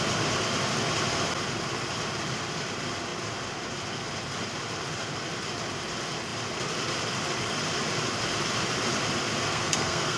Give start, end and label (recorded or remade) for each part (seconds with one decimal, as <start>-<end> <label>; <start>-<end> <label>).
0.0-9.4 recorded; 9.4-10.2 remade